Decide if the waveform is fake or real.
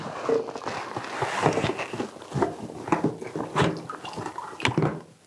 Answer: real